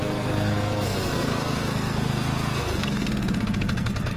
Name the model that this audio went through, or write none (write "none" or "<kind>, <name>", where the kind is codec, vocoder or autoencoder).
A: codec, SNAC